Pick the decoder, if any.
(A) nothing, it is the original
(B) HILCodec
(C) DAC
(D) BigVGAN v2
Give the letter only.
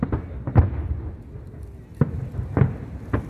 A